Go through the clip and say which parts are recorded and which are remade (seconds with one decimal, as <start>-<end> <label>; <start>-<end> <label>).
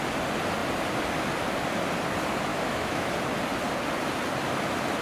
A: 0.0-2.5 recorded; 2.5-3.1 remade; 3.1-5.0 recorded